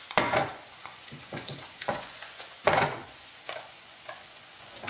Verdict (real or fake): fake